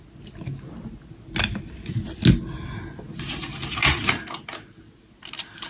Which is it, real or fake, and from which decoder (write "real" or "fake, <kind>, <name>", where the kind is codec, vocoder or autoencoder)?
real